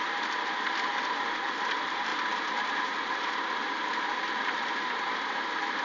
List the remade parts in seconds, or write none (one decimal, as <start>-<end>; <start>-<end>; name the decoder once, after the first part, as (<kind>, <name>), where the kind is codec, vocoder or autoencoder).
none